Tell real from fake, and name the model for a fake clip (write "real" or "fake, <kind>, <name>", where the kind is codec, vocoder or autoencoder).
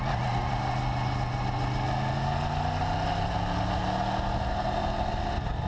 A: real